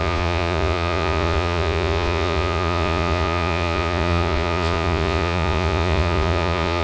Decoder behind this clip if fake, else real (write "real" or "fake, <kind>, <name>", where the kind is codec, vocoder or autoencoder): fake, vocoder, Vocos